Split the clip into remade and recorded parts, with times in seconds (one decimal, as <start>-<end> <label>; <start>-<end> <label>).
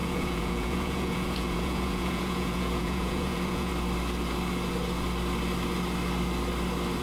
0.0-3.7 remade; 3.7-7.0 recorded